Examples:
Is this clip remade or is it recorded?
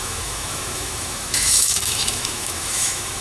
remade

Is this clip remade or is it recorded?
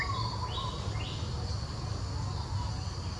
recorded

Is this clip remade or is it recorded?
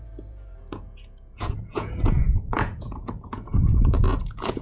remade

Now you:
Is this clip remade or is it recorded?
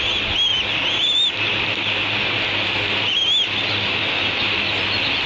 recorded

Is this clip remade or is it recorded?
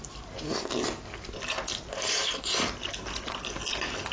recorded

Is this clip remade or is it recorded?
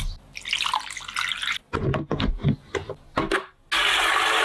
recorded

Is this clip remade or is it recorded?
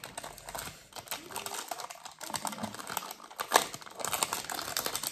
recorded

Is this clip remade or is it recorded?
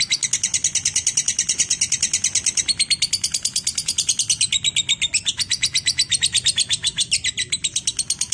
recorded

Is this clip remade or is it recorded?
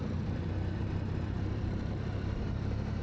remade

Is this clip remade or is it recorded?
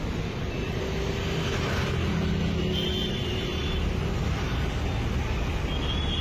recorded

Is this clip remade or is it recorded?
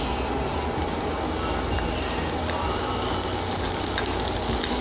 recorded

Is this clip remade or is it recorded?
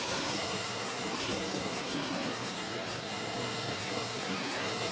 remade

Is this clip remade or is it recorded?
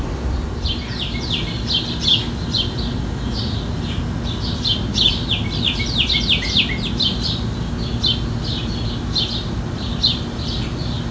recorded